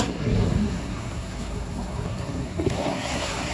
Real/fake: fake